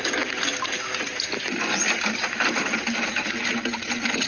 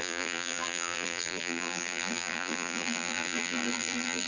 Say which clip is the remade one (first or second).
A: second